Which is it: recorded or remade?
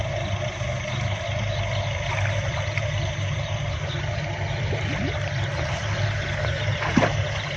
recorded